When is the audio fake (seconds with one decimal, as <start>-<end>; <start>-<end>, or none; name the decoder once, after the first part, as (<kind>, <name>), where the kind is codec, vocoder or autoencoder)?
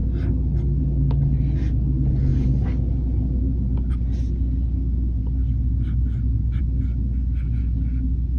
none